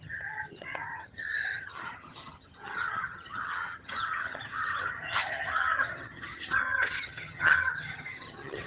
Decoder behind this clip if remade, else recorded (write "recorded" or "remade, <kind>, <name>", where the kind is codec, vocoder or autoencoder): remade, vocoder, HiFi-GAN